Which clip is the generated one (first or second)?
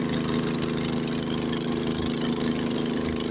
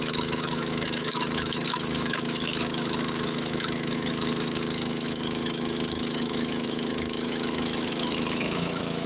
second